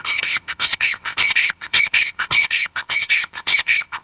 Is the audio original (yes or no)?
no